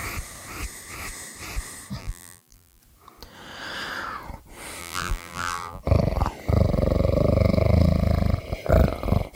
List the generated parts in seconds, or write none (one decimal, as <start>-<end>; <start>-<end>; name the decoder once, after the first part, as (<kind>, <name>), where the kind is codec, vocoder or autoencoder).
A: 2.0-2.8 (vocoder, BigVGAN v2); 4.8-5.8